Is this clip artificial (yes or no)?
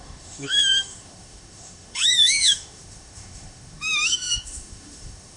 yes